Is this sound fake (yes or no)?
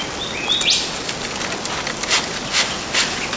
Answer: no